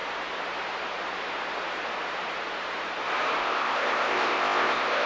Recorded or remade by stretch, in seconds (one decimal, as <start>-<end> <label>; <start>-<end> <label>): 0.0-3.4 recorded; 3.4-5.1 remade